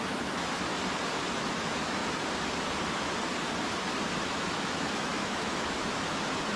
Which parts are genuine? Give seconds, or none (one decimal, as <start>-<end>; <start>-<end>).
0.7-1.6; 2.0-4.2